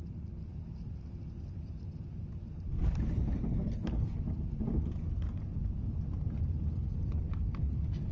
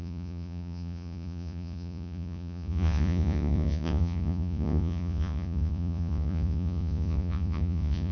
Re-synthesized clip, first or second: second